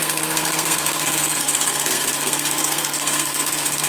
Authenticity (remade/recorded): remade